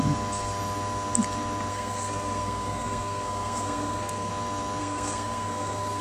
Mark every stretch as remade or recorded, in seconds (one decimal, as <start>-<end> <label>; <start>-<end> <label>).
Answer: 0.0-1.7 recorded; 1.7-4.3 remade; 4.3-4.8 recorded; 4.8-6.0 remade